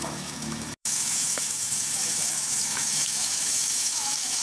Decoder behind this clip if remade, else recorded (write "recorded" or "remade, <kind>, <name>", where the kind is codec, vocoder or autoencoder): remade, autoencoder, DAC-VAE